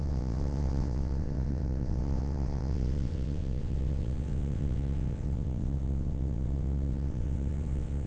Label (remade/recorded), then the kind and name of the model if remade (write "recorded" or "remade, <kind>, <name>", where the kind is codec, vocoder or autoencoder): remade, vocoder, WaveNeXt